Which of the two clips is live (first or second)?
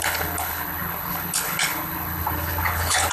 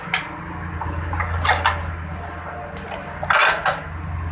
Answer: second